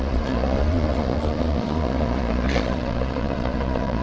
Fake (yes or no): yes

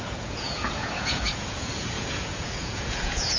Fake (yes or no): yes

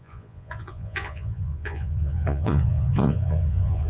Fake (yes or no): yes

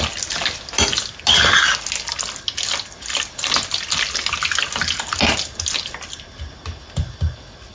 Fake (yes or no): no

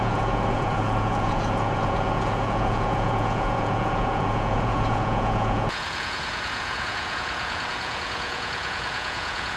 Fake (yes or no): yes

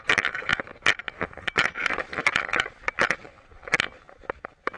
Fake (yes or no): no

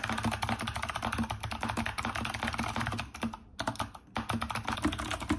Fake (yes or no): no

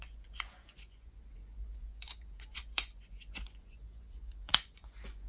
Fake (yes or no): yes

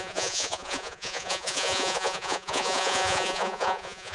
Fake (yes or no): yes